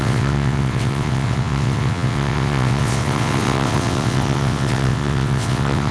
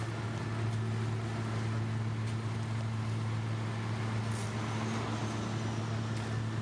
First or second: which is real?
second